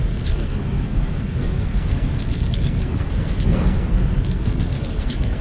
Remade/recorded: remade